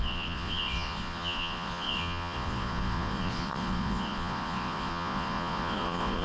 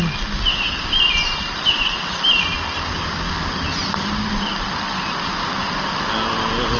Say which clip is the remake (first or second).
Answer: first